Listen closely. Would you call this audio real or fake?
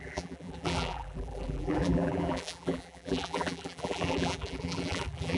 fake